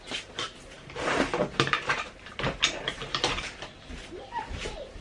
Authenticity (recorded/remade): remade